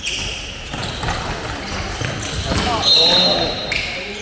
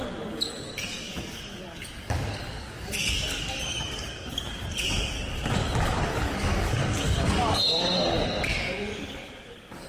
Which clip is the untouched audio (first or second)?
first